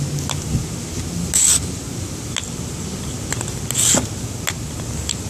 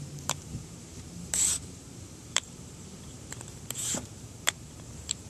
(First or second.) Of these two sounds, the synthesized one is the second